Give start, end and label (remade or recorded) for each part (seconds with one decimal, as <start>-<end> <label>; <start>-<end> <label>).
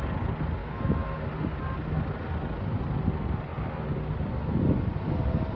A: 0.0-0.6 recorded; 0.6-1.2 remade; 1.2-5.6 recorded